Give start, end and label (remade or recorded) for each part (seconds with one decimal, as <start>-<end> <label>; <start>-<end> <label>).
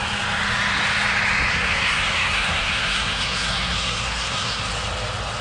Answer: 0.0-1.5 recorded; 1.5-4.7 remade; 4.7-5.4 recorded